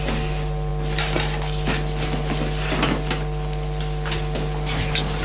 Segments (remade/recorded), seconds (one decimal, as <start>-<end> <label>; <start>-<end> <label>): 0.0-5.2 recorded